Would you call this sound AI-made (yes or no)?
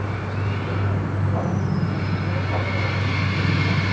no